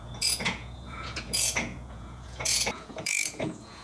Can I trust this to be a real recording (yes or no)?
no